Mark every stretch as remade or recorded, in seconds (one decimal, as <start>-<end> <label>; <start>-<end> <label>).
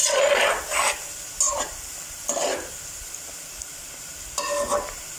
0.0-5.2 recorded